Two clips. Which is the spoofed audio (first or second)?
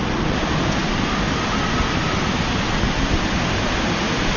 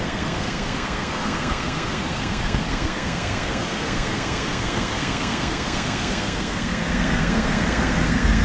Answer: second